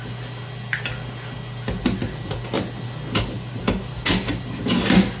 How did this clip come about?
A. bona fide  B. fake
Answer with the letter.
A